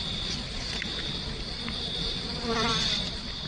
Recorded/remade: recorded